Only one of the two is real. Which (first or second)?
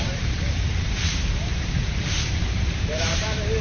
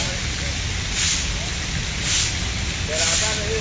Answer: second